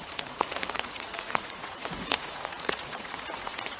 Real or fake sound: fake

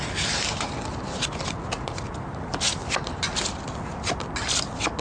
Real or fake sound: real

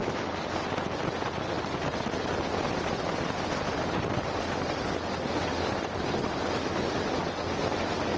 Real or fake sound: real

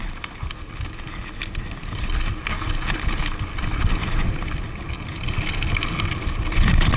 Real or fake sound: real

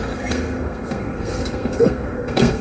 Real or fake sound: fake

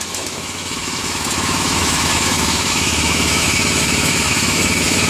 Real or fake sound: fake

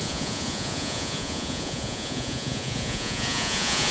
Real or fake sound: fake